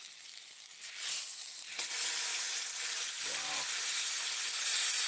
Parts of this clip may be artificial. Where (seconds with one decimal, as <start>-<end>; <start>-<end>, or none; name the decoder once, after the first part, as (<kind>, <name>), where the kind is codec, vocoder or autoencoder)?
none